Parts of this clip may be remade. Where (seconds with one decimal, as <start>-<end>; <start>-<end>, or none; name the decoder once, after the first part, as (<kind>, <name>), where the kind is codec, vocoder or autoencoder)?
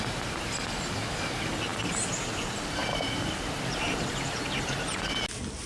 2.8-4.3 (vocoder, BigVGAN v2)